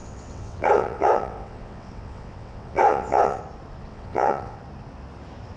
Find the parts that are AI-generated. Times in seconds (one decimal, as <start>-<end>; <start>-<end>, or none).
0.0-3.4; 3.9-4.6

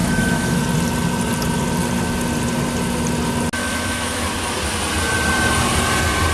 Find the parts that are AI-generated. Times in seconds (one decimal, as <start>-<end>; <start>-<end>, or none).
0.0-0.6; 3.6-4.2

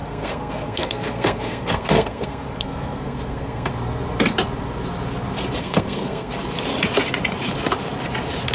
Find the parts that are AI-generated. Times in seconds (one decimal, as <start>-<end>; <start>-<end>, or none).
0.0-3.7; 5.6-6.3

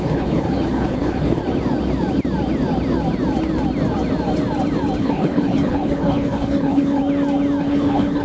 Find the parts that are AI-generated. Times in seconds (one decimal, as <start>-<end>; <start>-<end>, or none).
0.0-1.4; 5.0-7.0; 7.6-8.2